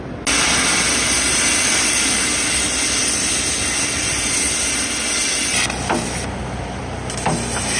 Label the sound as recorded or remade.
recorded